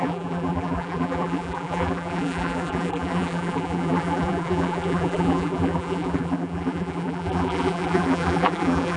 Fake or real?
fake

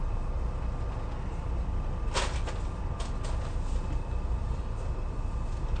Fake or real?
real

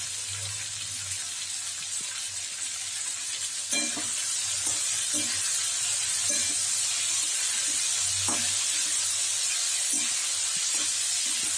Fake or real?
real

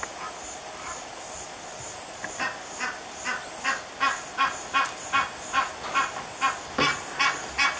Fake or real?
real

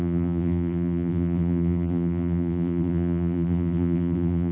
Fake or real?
fake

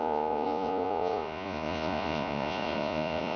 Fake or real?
fake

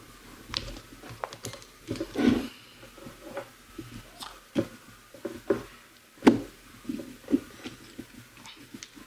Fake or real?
real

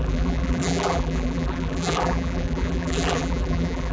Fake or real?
fake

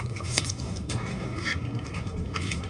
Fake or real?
fake